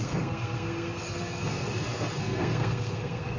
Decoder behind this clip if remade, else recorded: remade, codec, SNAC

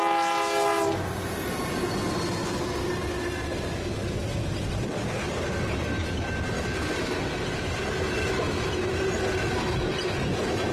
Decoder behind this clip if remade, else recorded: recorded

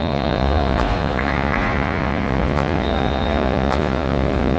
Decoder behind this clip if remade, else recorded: remade, vocoder, Vocos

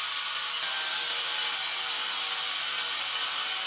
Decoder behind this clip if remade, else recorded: recorded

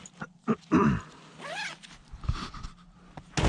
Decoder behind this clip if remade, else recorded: recorded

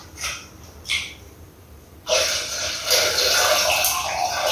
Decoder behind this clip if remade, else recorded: recorded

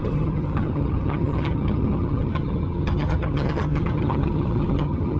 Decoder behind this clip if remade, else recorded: remade, vocoder, HiFi-GAN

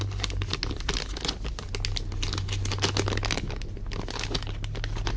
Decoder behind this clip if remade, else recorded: recorded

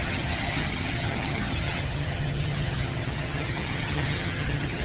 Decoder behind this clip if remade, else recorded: remade, vocoder, HiFi-GAN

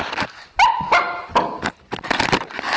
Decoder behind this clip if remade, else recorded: recorded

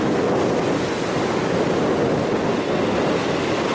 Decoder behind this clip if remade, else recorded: recorded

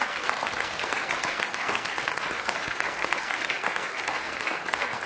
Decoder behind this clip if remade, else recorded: remade, codec, SNAC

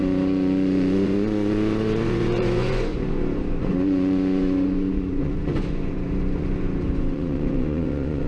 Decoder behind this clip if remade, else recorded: remade, vocoder, Vocos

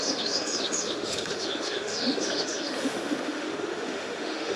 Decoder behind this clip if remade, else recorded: remade, autoencoder, DAC-VAE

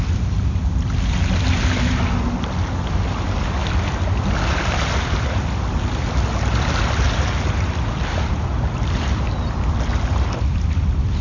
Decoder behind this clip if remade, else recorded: recorded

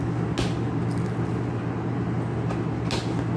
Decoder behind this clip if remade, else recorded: recorded